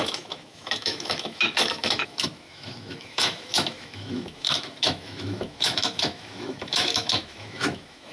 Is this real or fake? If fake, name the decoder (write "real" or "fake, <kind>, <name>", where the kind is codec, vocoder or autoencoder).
fake, autoencoder, DAC-VAE